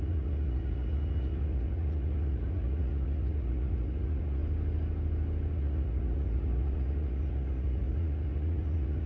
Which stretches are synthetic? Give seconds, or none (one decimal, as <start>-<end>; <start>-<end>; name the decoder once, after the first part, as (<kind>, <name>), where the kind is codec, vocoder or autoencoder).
0.0-4.4 (vocoder, Vocos); 5.5-9.1